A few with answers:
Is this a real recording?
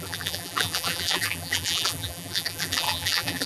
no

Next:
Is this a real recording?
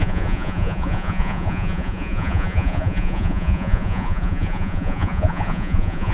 no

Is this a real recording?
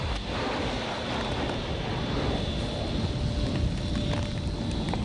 yes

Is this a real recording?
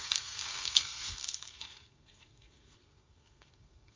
no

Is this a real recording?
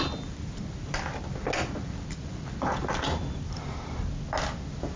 yes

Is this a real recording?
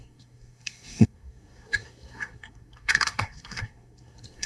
no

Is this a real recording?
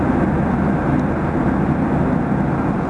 yes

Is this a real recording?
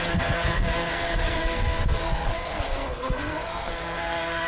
no